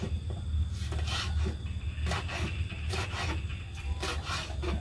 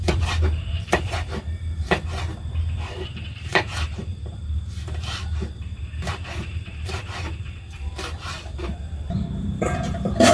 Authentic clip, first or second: first